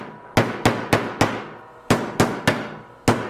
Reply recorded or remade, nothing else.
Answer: recorded